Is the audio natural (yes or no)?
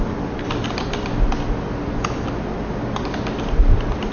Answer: yes